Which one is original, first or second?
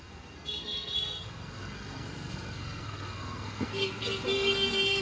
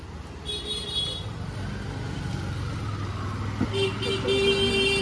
second